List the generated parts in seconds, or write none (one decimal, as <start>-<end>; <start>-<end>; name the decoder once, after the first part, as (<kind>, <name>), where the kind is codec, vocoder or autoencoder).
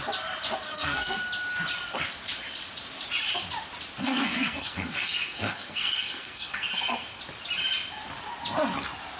0.7-1.2 (codec, SNAC); 4.0-7.2